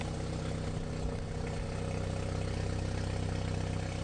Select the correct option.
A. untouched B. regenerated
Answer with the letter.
A